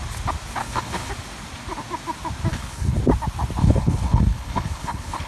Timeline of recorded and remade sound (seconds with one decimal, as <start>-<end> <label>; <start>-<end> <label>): 0.0-0.6 recorded; 0.6-1.1 remade; 1.1-2.5 recorded; 2.5-3.0 remade; 3.0-3.6 recorded; 3.6-5.3 remade